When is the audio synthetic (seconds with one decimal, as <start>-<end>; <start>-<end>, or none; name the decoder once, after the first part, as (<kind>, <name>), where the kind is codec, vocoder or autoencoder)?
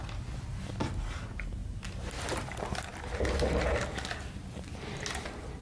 none